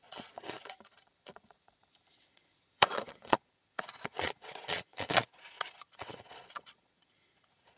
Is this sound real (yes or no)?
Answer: no